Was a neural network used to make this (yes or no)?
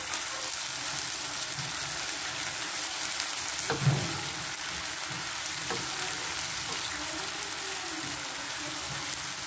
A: no